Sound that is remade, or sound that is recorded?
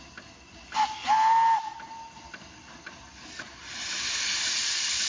recorded